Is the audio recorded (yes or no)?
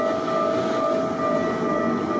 yes